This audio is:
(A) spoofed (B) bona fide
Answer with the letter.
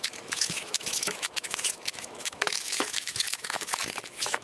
A